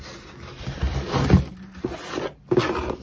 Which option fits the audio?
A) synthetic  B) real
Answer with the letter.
B